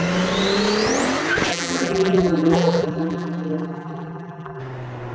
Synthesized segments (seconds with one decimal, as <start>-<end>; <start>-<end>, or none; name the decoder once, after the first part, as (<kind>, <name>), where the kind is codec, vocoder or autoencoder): 1.5-4.6 (vocoder, BigVGAN v2)